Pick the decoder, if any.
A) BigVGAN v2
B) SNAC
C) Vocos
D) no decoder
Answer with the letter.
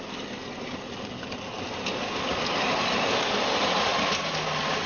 D